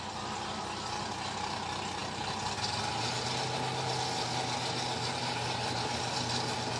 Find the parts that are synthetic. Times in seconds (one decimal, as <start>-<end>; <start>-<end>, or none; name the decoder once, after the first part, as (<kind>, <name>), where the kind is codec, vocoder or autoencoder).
none